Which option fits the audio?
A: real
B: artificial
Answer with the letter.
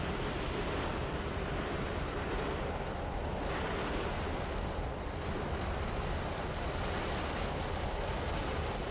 A